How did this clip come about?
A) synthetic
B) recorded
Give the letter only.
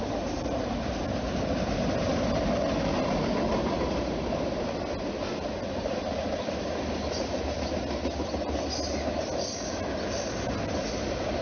B